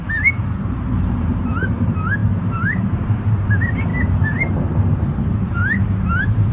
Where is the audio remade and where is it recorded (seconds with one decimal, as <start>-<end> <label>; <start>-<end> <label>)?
0.0-3.9 remade; 3.9-5.3 recorded; 5.3-6.5 remade